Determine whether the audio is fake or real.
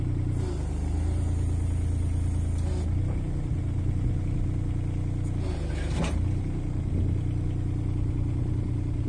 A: real